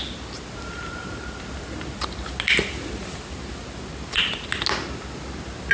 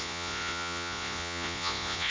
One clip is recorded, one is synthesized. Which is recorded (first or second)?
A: first